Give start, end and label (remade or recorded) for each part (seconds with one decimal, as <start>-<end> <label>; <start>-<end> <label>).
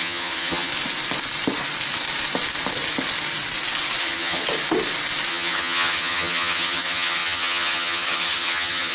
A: 0.0-0.7 remade; 0.7-4.0 recorded; 4.0-4.4 remade; 4.4-5.3 recorded; 5.3-8.9 remade